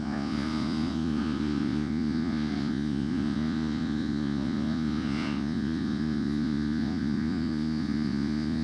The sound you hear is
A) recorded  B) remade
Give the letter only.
B